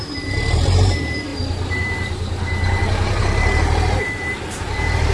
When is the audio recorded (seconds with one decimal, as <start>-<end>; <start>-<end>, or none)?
none